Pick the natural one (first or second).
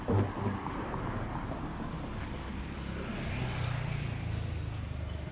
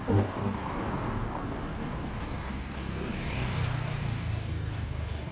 first